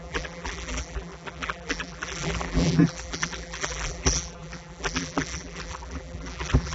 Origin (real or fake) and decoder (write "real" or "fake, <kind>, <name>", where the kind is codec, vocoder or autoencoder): fake, vocoder, BigVGAN v2